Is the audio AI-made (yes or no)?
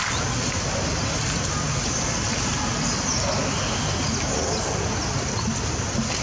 no